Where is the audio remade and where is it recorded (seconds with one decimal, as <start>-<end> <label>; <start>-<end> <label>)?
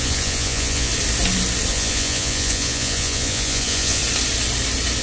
0.0-0.9 remade; 0.9-1.7 recorded; 1.7-4.0 remade; 4.0-5.0 recorded